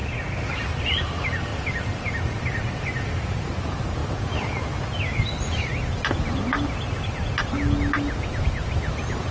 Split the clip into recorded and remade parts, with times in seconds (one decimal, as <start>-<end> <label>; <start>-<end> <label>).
0.0-1.0 recorded; 1.0-1.5 remade; 1.5-3.4 recorded; 3.4-4.0 remade; 4.0-8.4 recorded; 8.4-9.3 remade